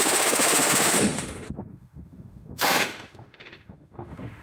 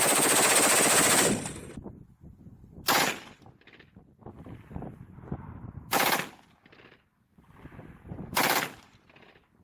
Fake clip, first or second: first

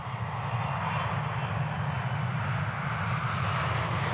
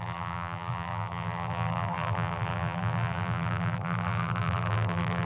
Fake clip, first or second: second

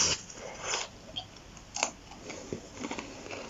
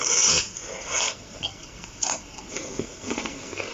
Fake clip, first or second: second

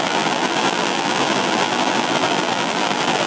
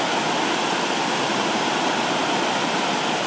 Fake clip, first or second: first